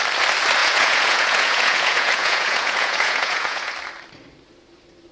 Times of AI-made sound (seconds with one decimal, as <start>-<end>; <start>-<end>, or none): 0.6-3.7

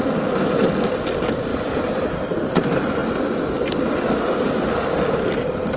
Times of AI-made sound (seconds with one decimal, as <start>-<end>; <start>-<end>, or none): none

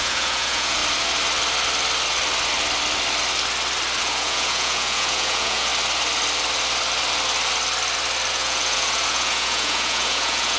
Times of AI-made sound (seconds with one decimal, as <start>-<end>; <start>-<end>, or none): 0.0-0.8; 4.0-5.7; 8.3-10.6

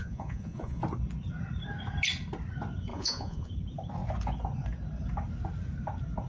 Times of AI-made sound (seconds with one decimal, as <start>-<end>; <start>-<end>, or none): 0.0-0.8; 2.9-3.5

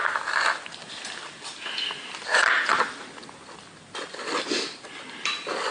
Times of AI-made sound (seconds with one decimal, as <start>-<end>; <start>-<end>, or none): none

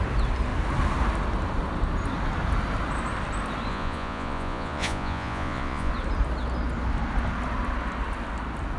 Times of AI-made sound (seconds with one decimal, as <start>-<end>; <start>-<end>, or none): 3.7-5.9